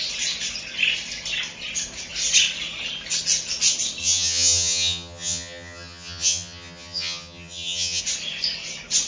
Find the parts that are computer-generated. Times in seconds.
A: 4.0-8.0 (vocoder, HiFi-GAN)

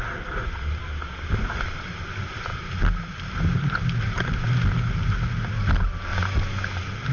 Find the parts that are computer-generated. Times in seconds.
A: none

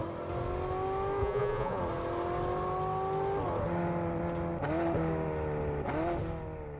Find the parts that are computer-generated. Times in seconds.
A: 1.2-1.8 (vocoder, Vocos)

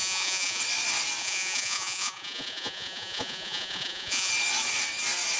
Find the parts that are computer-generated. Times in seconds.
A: 0.0-0.6 (vocoder, Vocos); 1.2-4.3